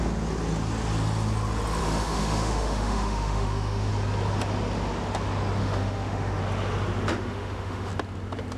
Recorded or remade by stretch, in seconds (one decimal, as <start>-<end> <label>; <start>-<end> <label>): 0.0-1.8 recorded; 1.8-3.9 remade; 3.9-5.6 recorded; 5.6-6.4 remade; 6.4-7.1 recorded; 7.1-7.9 remade; 7.9-8.6 recorded